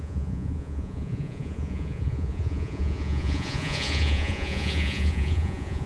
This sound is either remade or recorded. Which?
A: remade